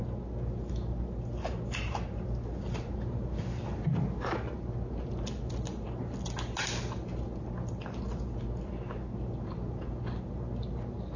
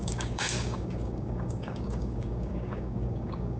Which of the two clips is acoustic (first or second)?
first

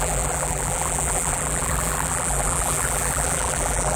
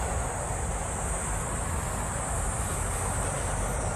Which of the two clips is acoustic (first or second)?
second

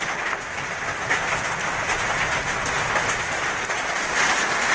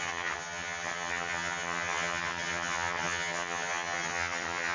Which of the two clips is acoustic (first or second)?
first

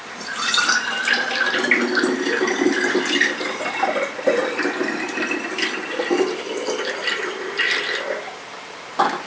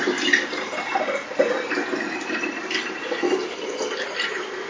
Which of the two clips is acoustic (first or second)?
second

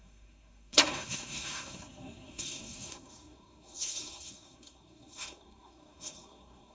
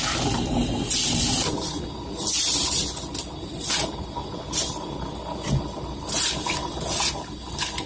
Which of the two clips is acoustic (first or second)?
second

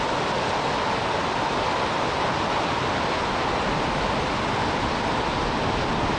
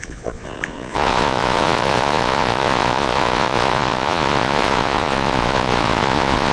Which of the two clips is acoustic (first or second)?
first